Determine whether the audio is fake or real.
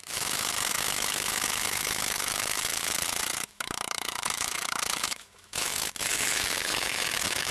fake